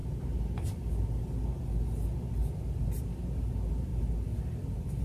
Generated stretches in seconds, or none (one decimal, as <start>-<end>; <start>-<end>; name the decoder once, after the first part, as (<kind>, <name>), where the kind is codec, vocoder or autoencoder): 3.0-3.9 (vocoder, BigVGAN v2); 4.6-5.0